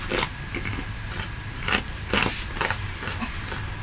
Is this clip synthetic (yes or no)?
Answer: no